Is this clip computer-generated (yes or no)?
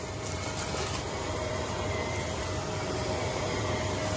yes